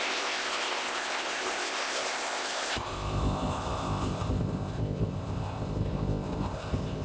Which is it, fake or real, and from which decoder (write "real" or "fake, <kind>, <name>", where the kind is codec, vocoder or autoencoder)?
fake, codec, ZipCodec